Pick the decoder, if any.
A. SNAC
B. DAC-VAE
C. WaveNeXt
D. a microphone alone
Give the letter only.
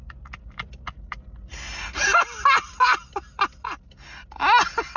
D